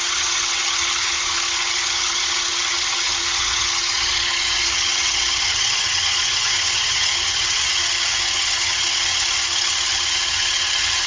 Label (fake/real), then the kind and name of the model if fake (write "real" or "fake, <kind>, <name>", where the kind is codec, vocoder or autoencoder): fake, vocoder, HiFi-GAN